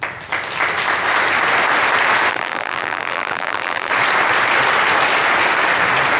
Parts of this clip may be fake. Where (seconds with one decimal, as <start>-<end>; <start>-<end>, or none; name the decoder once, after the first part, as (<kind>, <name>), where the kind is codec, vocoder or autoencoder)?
2.3-3.9 (vocoder, BigVGAN v2)